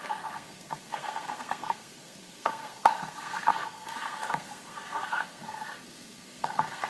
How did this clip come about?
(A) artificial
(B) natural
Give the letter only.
A